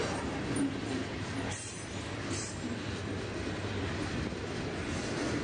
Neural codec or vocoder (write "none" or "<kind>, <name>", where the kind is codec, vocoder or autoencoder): none